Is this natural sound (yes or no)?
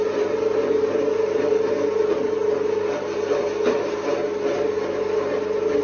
yes